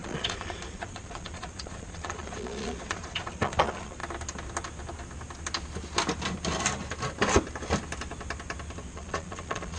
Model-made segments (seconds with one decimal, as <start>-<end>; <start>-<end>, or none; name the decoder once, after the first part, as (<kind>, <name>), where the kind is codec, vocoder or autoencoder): 0.0-4.0 (vocoder, Vocos); 8.9-9.8